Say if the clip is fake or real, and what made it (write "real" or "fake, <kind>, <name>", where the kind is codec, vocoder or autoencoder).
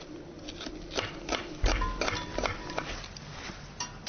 real